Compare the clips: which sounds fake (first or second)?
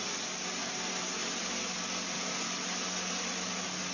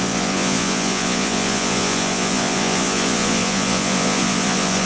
second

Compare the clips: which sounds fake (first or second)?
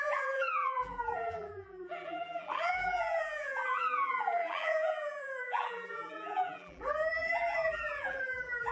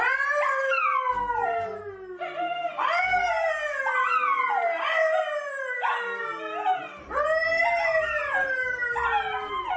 first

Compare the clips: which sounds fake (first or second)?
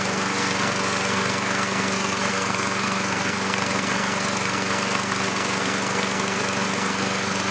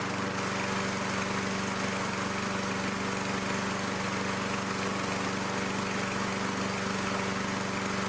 first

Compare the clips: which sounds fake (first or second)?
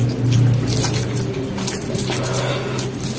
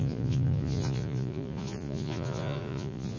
second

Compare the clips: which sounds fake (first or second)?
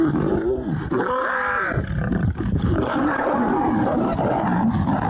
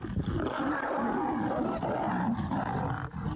first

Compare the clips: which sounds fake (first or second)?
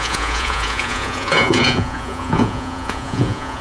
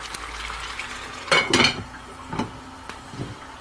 first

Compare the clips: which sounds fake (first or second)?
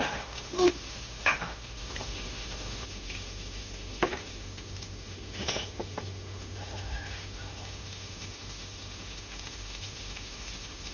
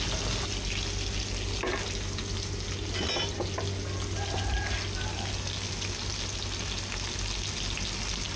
first